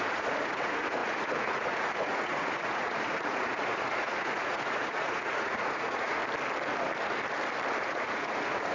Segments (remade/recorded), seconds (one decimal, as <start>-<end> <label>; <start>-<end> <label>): 0.0-6.2 remade; 6.2-7.8 recorded; 7.8-8.7 remade